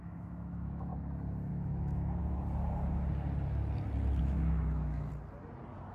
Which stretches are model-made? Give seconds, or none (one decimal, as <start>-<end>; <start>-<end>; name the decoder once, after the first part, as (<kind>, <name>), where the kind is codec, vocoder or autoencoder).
0.0-0.9 (autoencoder, DAC-VAE); 1.5-2.2; 4.2-5.1